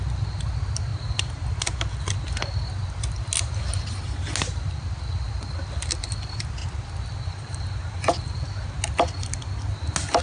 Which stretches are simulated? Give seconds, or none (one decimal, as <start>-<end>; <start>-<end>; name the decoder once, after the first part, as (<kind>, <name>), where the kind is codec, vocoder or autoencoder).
none